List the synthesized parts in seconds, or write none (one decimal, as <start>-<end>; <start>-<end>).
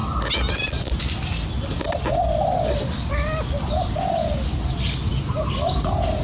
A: none